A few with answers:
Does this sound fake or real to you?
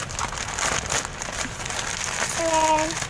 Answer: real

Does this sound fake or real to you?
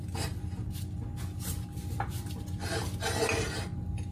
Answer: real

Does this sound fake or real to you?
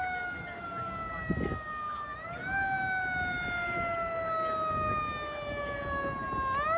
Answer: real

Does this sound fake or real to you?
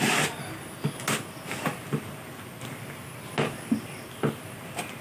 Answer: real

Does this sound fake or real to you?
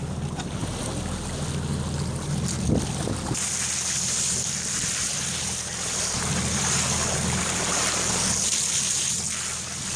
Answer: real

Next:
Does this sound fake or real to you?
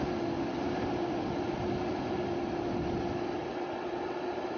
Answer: real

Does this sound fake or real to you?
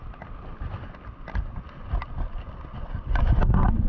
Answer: real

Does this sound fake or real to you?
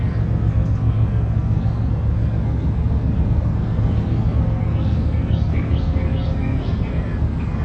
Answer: fake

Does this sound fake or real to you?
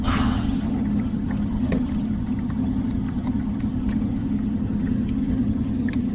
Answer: fake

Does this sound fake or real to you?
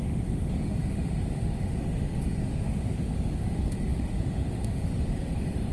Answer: fake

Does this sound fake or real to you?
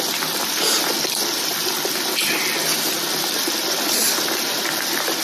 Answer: fake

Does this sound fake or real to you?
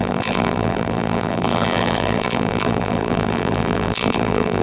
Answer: fake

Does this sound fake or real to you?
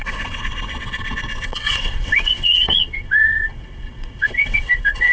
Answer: fake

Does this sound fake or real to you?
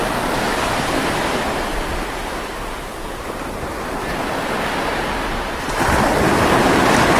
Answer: real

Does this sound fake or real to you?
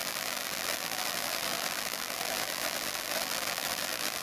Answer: fake